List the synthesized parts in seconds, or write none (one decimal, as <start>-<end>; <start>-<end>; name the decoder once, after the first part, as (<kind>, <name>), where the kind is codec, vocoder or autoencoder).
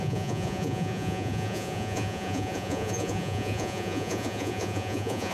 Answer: 0.0-5.3 (vocoder, Vocos)